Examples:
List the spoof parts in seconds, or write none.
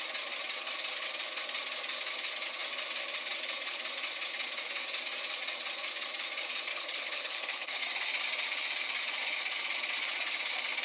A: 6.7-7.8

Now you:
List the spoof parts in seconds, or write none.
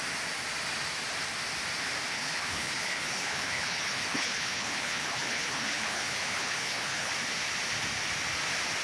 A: 2.1-7.1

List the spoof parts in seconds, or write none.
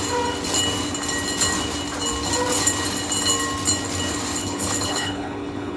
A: 4.4-5.8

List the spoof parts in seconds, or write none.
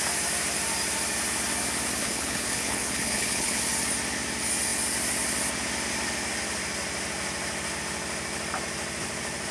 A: 2.0-3.6